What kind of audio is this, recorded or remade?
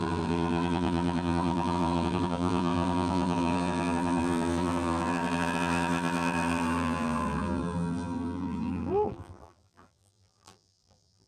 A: remade